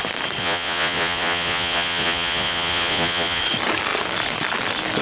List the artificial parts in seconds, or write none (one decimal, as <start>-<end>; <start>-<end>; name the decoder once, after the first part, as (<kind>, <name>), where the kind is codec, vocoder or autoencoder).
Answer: 0.4-3.4 (vocoder, Vocos)